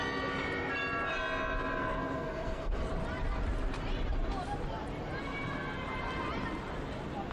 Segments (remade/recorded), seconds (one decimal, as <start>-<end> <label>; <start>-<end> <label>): 0.0-1.8 recorded; 1.8-2.9 remade; 2.9-7.3 recorded